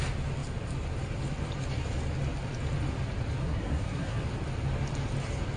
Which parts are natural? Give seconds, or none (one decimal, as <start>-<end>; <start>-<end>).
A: 0.0-3.4; 4.2-5.6